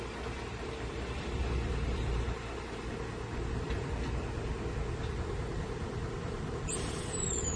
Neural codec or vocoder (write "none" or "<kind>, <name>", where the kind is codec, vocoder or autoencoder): vocoder, BigVGAN v2